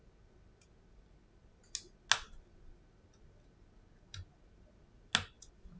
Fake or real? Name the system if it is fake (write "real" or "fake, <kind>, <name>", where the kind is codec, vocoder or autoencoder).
real